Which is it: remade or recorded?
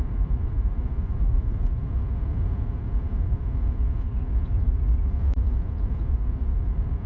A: recorded